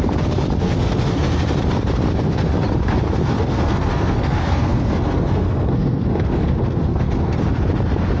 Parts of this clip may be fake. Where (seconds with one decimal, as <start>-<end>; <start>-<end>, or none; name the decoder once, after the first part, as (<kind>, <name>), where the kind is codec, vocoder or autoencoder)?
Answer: 0.6-1.4 (codec, SNAC); 3.4-7.4